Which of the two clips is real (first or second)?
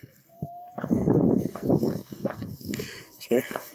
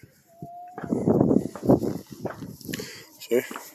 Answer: second